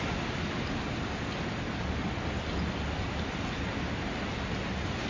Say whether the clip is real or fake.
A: real